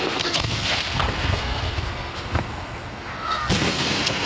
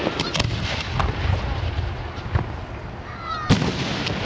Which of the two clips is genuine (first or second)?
second